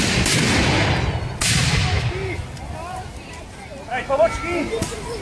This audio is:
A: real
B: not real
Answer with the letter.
A